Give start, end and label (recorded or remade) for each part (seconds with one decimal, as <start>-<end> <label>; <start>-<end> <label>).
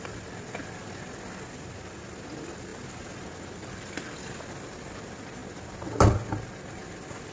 0.0-7.3 recorded